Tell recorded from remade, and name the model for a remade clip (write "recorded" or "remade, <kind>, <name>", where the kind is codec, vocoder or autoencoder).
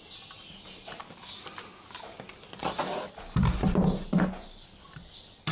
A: recorded